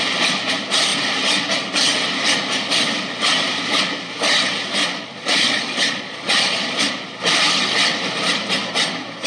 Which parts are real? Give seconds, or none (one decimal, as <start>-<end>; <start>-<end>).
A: 0.0-4.8; 6.9-9.3